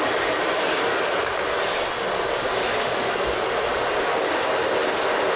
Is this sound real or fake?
real